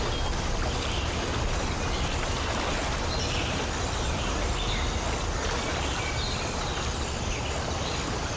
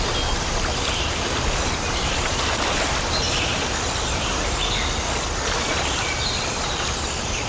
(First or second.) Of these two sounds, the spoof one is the second